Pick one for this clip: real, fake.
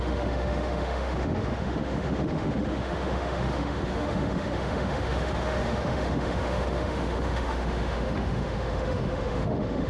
fake